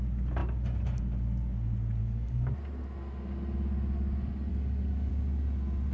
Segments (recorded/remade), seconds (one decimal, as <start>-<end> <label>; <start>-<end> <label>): 0.0-2.0 recorded; 2.0-2.5 remade; 2.5-4.5 recorded; 4.5-5.1 remade; 5.1-5.9 recorded